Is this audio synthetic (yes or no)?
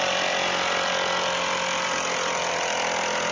no